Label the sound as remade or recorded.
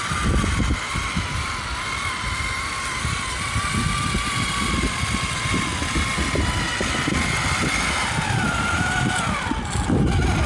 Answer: recorded